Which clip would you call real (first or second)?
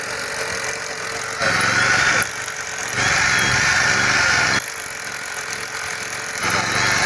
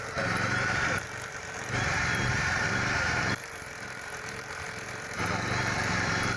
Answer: first